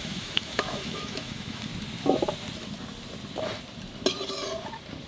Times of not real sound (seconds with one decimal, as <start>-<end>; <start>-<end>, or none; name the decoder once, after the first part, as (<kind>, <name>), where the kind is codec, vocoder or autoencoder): 0.0-1.7 (autoencoder, DAC-VAE)